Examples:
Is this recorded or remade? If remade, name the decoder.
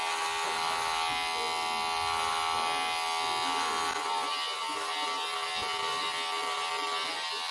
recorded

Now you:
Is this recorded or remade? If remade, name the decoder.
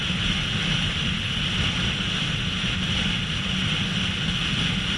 recorded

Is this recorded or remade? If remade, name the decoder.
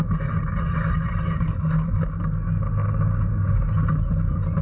recorded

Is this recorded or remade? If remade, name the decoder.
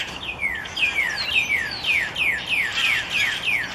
remade, vocoder, BigVGAN v2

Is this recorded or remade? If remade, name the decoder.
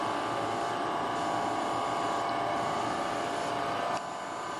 recorded